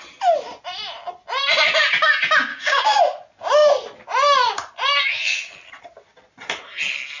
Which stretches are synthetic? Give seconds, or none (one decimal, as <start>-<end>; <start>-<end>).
2.5-3.0